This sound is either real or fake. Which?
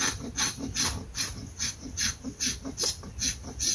real